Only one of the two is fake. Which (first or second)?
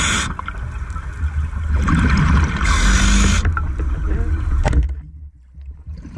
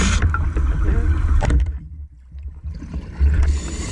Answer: second